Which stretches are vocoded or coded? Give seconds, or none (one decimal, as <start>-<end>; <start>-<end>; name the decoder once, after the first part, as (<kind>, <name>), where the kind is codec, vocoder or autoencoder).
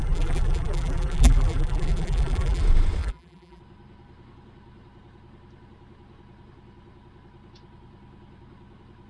0.0-2.6 (vocoder, BigVGAN v2); 3.0-3.6